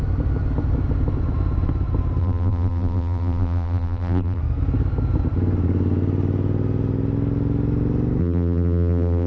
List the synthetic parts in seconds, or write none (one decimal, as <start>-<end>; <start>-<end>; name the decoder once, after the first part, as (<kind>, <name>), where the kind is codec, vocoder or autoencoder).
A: 2.2-4.4 (vocoder, BigVGAN v2); 8.2-9.3